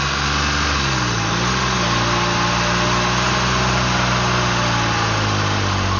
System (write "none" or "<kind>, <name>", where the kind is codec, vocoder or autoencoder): none